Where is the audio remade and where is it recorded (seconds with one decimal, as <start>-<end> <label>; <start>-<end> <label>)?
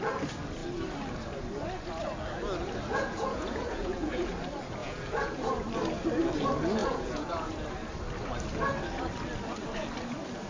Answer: 0.0-2.9 recorded; 2.9-4.3 remade; 4.3-4.8 recorded; 4.8-5.4 remade; 5.4-6.8 recorded; 6.8-7.5 remade; 7.5-10.5 recorded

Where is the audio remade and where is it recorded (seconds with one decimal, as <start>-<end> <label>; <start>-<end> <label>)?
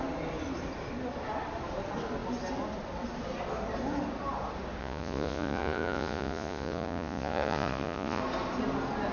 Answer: 0.0-4.8 recorded; 4.8-8.2 remade; 8.2-9.1 recorded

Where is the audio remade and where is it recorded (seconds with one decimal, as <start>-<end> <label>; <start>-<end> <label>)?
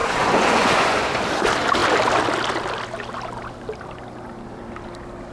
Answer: 0.0-1.2 remade; 1.2-5.3 recorded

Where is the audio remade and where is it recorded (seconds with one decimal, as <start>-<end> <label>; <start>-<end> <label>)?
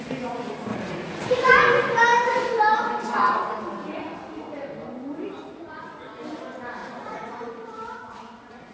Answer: 0.0-0.7 recorded; 0.7-1.5 remade; 1.5-6.8 recorded; 6.8-7.5 remade; 7.5-8.7 recorded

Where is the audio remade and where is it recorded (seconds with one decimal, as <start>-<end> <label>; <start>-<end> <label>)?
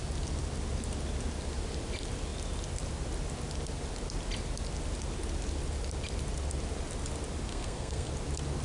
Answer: 0.0-7.5 recorded; 7.5-8.1 remade; 8.1-8.6 recorded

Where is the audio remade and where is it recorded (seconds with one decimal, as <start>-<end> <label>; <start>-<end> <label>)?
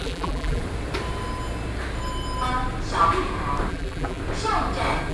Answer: 0.0-0.6 remade; 0.6-3.7 recorded; 3.7-4.2 remade; 4.2-5.1 recorded